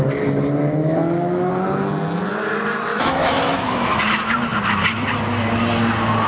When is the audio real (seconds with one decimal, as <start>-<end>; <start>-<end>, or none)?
0.0-0.8; 1.5-2.9; 4.0-6.3